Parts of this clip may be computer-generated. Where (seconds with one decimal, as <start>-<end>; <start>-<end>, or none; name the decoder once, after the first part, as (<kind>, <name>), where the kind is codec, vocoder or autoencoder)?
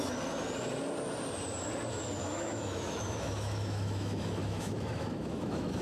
2.2-5.8 (autoencoder, DAC-VAE)